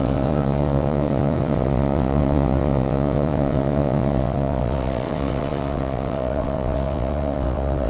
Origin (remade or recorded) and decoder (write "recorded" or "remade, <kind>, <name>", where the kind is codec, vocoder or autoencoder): remade, vocoder, WaveNeXt